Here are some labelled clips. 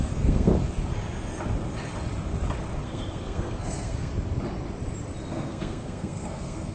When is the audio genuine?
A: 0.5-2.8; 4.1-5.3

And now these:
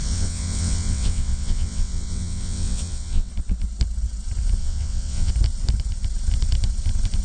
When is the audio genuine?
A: 3.3-4.6; 5.3-7.2

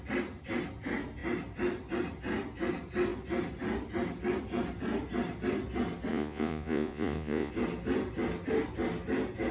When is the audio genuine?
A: 0.0-6.1; 7.5-9.5

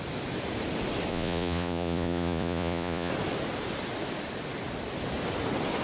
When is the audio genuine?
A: 0.0-1.1; 3.1-5.8

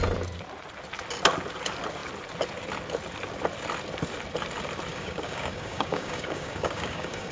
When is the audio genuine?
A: 0.0-4.9

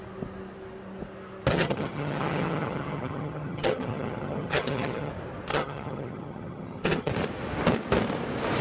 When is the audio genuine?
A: 0.0-1.5; 5.1-5.5; 7.1-8.6